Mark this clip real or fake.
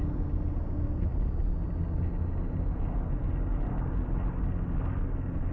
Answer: real